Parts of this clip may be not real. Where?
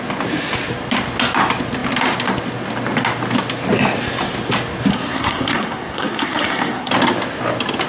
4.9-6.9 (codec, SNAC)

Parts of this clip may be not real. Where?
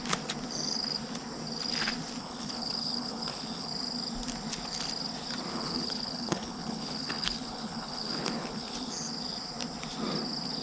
2.2-3.7 (codec, HILCodec); 5.5-8.9